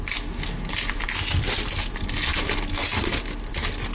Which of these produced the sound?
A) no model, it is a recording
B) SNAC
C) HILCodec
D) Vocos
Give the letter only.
A